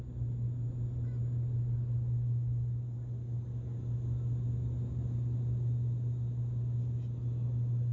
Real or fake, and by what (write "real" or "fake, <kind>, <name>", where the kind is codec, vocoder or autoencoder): real